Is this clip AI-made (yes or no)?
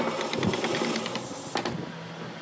no